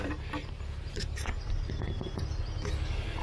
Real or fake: real